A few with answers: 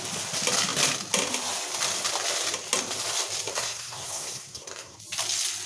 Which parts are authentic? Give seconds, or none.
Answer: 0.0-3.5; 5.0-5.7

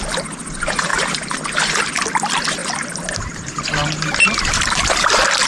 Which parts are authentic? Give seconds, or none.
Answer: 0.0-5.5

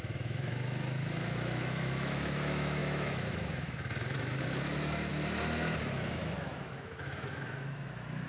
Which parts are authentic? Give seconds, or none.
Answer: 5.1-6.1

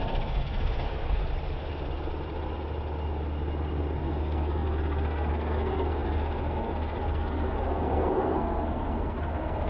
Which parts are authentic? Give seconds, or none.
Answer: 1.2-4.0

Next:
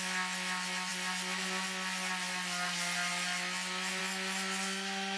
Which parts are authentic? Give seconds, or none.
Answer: 0.0-5.2

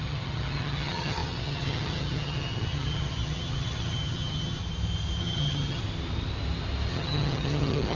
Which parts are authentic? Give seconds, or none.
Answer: 4.6-5.2; 5.8-6.9